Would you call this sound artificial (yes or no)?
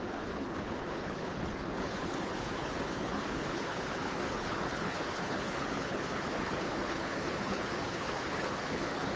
yes